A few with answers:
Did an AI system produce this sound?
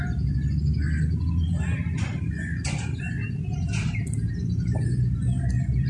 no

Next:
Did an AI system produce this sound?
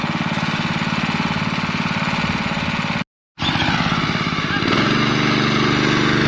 no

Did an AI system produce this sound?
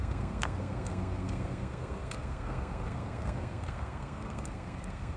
yes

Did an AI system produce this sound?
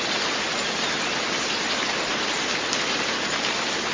no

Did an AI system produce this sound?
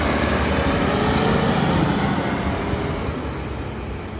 no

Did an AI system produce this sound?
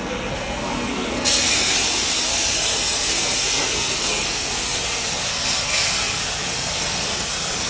yes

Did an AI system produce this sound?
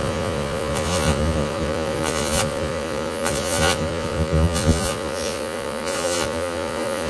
yes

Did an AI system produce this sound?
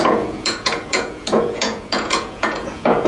yes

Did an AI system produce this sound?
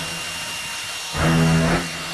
no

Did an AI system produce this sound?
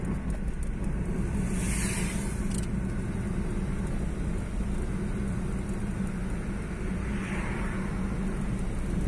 no